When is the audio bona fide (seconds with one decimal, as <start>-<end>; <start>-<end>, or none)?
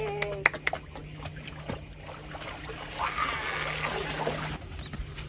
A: 0.0-5.3